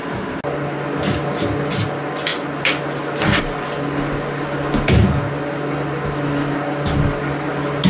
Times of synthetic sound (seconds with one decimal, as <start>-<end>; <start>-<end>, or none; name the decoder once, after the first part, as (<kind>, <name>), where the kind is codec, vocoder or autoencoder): none